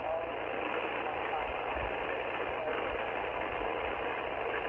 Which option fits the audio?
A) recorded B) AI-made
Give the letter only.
A